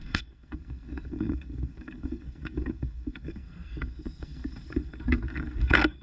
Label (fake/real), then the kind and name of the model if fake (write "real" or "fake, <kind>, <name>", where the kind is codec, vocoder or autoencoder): fake, codec, SNAC